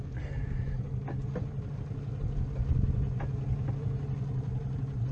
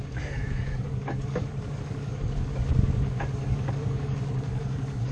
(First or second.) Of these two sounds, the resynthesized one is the second